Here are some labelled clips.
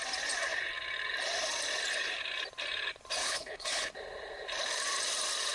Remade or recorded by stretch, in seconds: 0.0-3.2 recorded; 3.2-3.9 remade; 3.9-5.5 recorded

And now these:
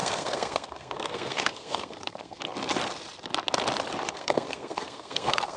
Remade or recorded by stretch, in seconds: 0.0-2.4 remade; 2.4-4.1 recorded; 4.1-5.6 remade

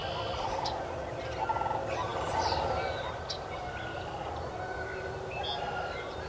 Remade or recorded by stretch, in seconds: 0.0-0.7 remade; 0.7-6.3 recorded

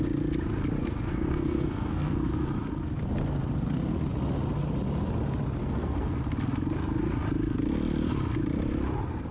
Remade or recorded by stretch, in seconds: 0.0-0.8 recorded; 0.8-2.5 remade; 2.5-5.6 recorded; 5.6-6.2 remade; 6.2-9.3 recorded

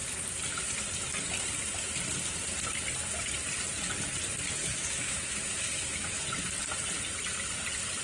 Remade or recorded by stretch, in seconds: 0.0-4.6 recorded; 4.6-6.2 remade; 6.2-8.0 recorded

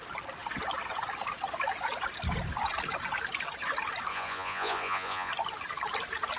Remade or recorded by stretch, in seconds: 0.0-4.1 recorded; 4.1-5.3 remade; 5.3-6.4 recorded

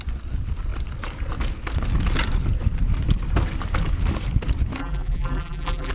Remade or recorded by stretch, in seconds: 0.0-4.8 recorded; 4.8-5.9 remade

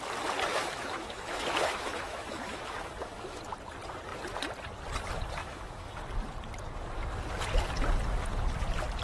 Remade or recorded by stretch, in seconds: 0.0-0.5 recorded; 0.5-3.4 remade; 3.4-5.4 recorded; 5.4-6.0 remade; 6.0-9.0 recorded